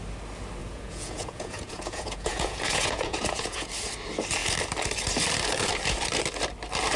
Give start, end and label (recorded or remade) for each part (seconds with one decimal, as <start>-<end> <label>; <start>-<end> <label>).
0.0-0.6 recorded; 0.6-3.7 remade; 3.7-7.0 recorded